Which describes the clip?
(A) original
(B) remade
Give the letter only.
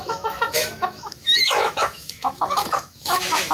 B